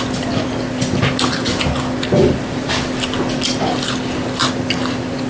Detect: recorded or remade recorded